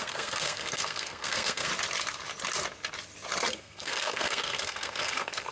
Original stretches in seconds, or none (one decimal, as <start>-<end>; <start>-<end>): 1.7-3.5

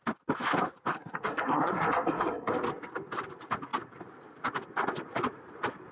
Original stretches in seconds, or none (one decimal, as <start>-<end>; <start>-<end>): 0.0-0.9; 2.5-5.9

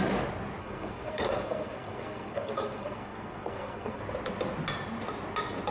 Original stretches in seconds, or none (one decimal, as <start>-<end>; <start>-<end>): 0.0-0.6; 4.0-5.7

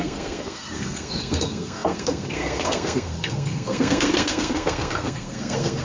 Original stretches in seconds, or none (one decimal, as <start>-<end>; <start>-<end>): none

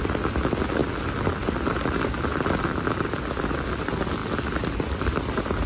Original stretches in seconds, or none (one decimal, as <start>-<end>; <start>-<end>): 0.0-5.7

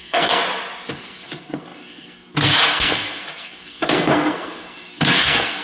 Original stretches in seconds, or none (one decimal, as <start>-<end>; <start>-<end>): 0.4-0.9

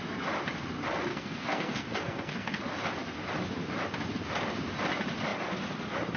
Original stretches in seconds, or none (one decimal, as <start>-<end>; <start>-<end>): 0.0-1.1; 2.6-6.2